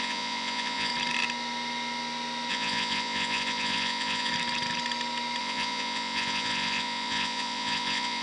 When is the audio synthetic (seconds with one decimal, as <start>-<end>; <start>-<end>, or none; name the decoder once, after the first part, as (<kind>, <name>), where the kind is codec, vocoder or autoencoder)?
0.0-0.9 (vocoder, Vocos); 2.5-4.3; 5.4-8.2